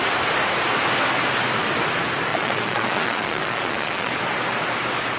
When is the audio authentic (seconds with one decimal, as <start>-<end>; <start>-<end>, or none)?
0.0-2.3; 4.1-5.2